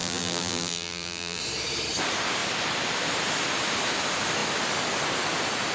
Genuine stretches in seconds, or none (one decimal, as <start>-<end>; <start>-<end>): 1.4-5.7